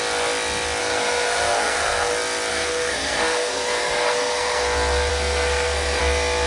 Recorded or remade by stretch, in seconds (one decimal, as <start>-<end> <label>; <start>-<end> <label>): 0.0-0.8 recorded; 0.8-2.1 remade; 2.1-2.5 recorded; 2.5-4.6 remade; 4.6-5.1 recorded; 5.1-6.0 remade; 6.0-6.5 recorded